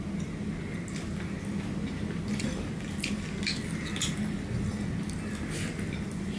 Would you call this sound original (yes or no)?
yes